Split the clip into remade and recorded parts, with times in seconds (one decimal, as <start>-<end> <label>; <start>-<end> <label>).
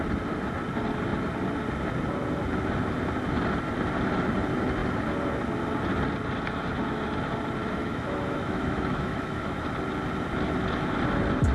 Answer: 0.0-7.8 recorded; 7.8-9.6 remade; 9.6-11.5 recorded